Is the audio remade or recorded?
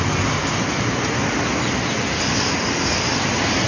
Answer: recorded